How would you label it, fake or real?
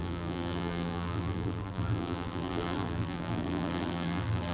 fake